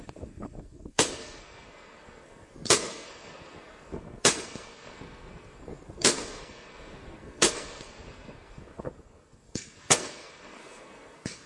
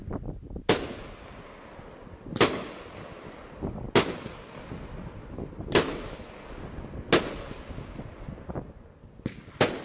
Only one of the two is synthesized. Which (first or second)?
first